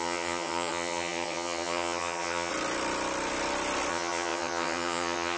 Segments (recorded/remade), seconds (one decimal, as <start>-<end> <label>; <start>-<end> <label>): 0.0-2.5 remade; 2.5-3.9 recorded; 3.9-5.4 remade